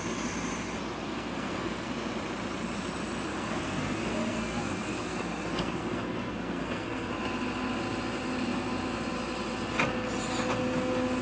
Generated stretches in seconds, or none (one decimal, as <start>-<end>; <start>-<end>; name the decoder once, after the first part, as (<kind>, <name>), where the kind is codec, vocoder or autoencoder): 1.0-1.9 (codec, SNAC); 3.3-7.1